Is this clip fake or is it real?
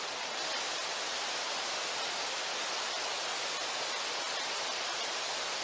real